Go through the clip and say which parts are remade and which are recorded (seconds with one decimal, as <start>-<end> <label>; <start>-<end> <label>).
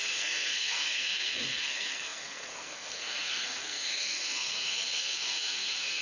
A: 0.0-6.0 remade